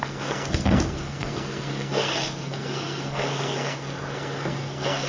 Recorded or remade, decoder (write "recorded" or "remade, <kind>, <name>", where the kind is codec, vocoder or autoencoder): remade, codec, SNAC